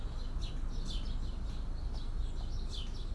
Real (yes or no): yes